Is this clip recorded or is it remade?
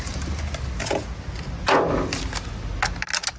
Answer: recorded